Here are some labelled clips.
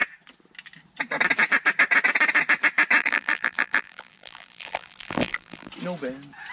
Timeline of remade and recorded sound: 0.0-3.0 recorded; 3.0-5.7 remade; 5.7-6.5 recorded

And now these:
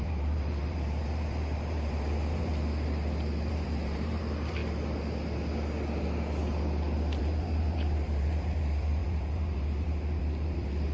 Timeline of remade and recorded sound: 0.0-2.5 remade; 2.5-3.5 recorded; 3.5-4.6 remade; 4.6-7.2 recorded; 7.2-10.9 remade

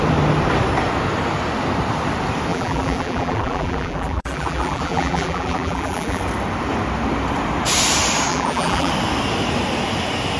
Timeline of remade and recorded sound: 0.0-2.5 recorded; 2.5-6.2 remade; 6.2-8.3 recorded; 8.3-8.9 remade; 8.9-10.4 recorded